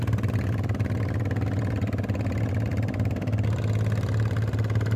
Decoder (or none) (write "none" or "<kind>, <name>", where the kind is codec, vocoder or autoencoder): none